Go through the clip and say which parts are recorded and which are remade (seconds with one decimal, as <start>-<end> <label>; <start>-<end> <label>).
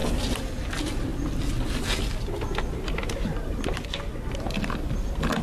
0.0-5.4 recorded